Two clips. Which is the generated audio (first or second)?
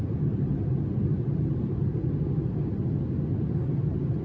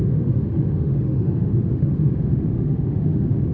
second